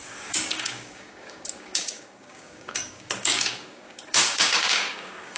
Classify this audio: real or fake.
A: fake